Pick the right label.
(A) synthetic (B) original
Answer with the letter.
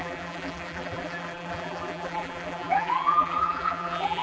A